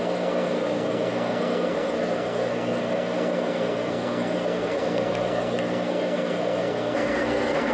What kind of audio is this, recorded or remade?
remade